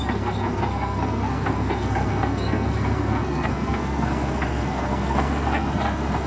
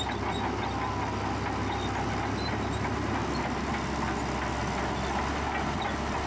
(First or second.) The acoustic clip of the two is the second